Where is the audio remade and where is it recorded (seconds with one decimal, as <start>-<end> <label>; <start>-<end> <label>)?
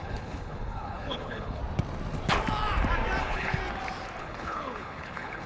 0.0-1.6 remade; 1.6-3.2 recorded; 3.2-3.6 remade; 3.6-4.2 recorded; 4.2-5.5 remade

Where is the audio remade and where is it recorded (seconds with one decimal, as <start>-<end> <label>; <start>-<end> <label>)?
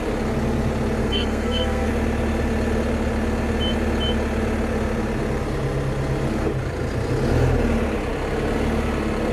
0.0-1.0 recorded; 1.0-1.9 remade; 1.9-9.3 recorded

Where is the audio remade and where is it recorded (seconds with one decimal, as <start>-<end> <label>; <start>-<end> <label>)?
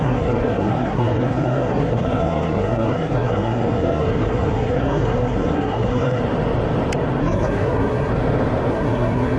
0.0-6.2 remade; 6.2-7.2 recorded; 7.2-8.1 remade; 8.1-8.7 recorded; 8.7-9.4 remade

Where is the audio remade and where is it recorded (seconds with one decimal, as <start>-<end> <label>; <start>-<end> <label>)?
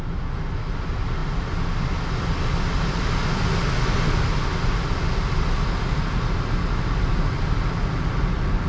0.0-8.7 recorded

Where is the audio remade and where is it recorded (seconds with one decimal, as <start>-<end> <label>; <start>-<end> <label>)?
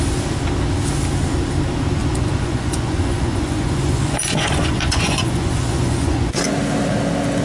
0.0-2.0 recorded; 2.0-6.4 remade; 6.4-7.4 recorded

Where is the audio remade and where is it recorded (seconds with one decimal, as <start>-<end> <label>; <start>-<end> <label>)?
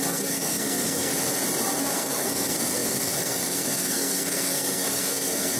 0.0-1.1 remade; 1.1-1.9 recorded; 1.9-5.6 remade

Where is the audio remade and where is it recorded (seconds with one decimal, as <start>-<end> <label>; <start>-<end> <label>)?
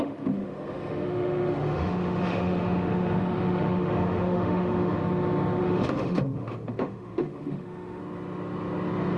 0.0-5.0 remade; 5.0-5.6 recorded; 5.6-8.0 remade; 8.0-9.2 recorded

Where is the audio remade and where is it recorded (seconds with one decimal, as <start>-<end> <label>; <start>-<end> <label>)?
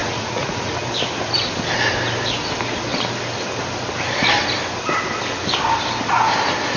0.0-0.7 remade; 0.7-6.8 recorded